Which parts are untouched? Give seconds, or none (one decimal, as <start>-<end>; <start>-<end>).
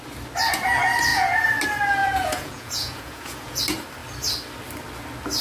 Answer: 0.0-1.1; 1.6-2.0; 3.6-5.4